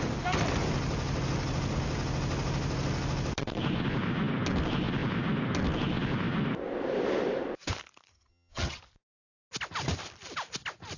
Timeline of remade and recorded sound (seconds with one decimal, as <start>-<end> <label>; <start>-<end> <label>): 0.0-8.1 recorded; 8.1-8.8 remade; 8.8-11.0 recorded